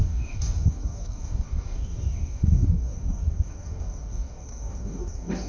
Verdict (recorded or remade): remade